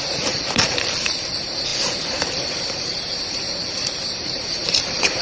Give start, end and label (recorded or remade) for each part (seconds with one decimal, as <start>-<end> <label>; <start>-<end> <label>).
0.0-5.2 remade